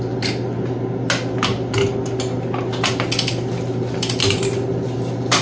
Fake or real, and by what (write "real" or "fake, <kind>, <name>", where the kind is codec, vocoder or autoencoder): real